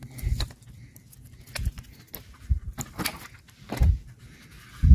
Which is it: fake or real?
real